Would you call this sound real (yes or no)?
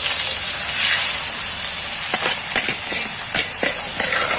yes